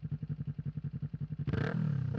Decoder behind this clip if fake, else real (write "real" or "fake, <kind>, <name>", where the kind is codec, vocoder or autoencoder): real